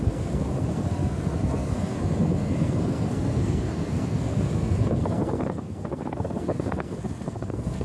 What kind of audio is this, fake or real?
fake